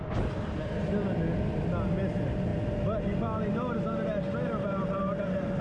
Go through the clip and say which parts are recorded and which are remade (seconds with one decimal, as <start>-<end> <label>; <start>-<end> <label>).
0.0-5.6 recorded